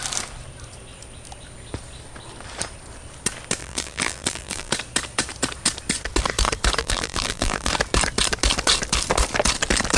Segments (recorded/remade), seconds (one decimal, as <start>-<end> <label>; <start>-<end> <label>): 0.0-3.6 recorded; 3.6-4.7 remade; 4.7-6.8 recorded; 6.8-7.7 remade; 7.7-10.0 recorded